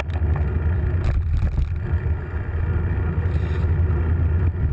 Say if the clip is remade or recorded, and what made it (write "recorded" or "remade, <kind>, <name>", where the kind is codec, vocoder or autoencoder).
recorded